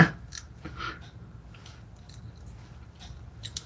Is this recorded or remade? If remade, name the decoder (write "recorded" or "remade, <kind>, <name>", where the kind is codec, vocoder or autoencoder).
recorded